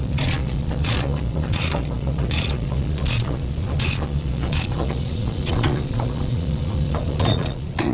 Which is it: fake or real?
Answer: fake